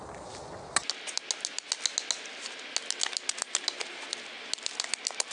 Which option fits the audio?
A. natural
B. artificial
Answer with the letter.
A